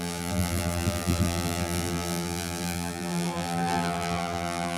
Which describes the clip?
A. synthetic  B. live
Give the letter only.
A